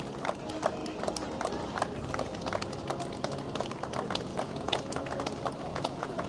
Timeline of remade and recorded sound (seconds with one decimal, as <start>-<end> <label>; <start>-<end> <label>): 0.0-4.3 recorded; 4.3-5.2 remade; 5.2-5.7 recorded; 5.7-6.3 remade

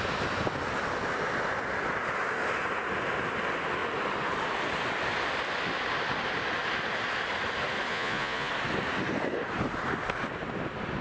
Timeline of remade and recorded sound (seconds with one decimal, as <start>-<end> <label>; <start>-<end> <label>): 0.0-7.9 recorded; 7.9-8.5 remade; 8.5-11.0 recorded

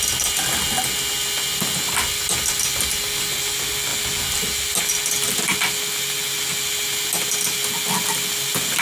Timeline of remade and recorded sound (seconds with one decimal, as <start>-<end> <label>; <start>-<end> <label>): 0.0-8.8 recorded

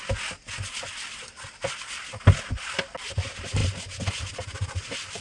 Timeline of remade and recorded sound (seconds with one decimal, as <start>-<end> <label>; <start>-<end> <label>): 0.0-5.2 recorded